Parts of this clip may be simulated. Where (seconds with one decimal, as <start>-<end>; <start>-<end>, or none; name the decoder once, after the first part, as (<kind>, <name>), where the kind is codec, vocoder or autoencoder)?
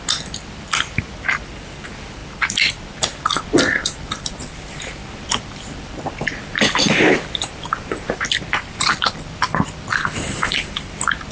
0.0-11.3 (vocoder, BigVGAN v2)